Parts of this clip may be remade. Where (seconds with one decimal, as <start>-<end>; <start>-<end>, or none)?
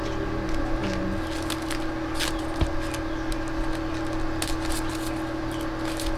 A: none